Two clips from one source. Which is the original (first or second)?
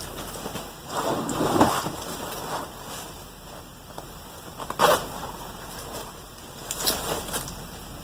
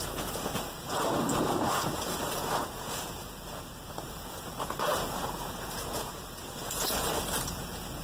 first